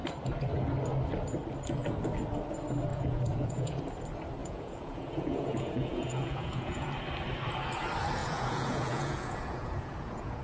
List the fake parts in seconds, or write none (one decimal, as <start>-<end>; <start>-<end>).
2.9-3.8; 4.4-6.9; 8.2-10.4